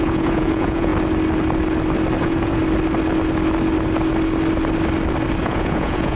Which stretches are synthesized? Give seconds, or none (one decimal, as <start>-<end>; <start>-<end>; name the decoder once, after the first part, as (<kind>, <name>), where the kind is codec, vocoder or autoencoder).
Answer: 0.0-0.9 (vocoder, Vocos); 2.2-2.6; 5.4-6.2